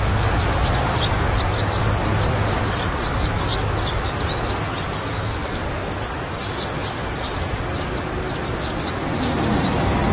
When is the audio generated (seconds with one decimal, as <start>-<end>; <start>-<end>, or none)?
none